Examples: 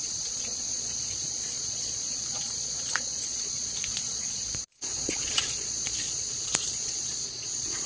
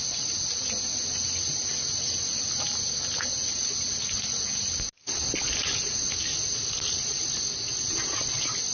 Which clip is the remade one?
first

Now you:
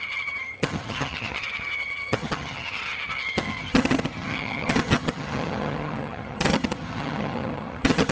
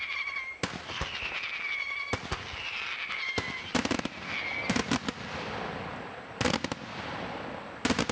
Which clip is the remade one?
first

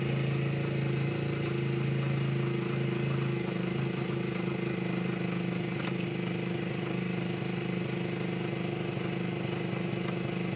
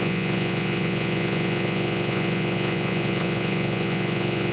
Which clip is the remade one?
second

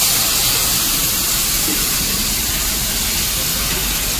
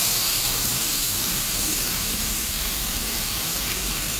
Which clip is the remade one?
second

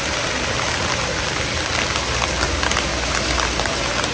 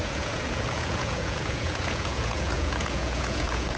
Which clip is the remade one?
second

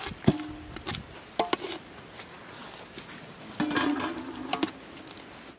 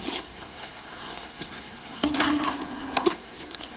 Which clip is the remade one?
second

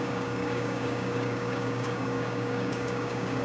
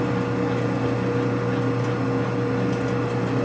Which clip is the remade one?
first